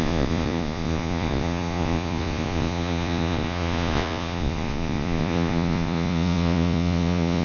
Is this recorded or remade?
remade